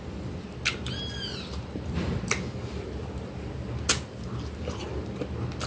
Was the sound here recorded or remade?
recorded